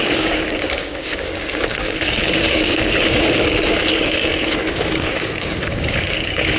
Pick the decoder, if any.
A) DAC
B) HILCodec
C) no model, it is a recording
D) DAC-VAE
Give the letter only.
A